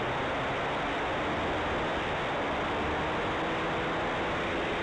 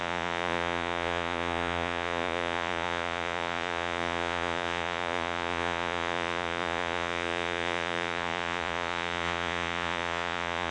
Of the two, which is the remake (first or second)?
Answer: second